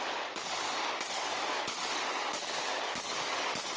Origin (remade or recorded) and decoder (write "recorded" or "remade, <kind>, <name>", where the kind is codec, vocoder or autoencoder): remade, codec, DAC